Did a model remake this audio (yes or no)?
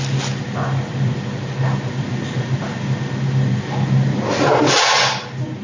no